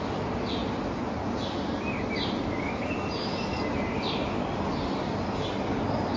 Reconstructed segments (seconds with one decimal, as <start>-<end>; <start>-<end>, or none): none